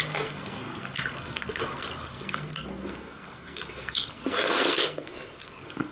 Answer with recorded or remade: remade